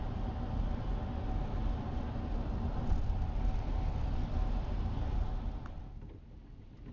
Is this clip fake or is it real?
real